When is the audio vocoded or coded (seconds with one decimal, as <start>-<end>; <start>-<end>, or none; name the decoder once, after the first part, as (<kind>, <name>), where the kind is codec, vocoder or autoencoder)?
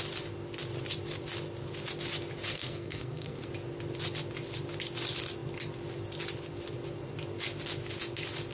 2.5-3.5 (codec, SNAC)